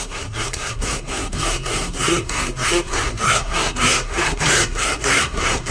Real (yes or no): no